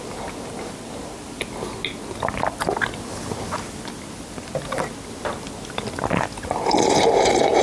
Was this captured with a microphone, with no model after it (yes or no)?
yes